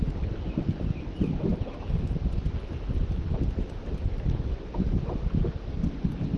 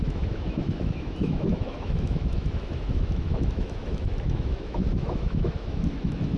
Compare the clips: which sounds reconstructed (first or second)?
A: second